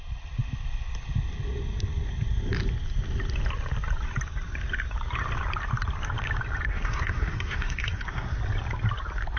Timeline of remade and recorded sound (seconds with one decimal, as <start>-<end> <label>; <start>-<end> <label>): 0.0-6.7 recorded; 6.7-8.4 remade; 8.4-9.4 recorded